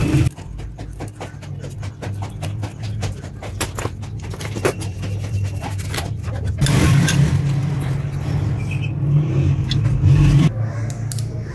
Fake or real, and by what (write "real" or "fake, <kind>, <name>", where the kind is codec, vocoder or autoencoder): real